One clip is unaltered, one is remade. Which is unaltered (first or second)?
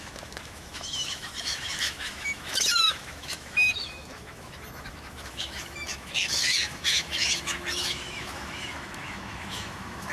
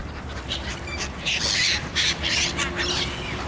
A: second